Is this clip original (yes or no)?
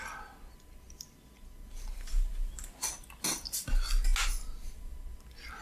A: yes